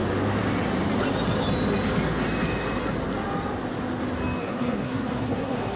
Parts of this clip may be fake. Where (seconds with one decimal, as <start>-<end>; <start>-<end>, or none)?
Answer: 4.4-5.8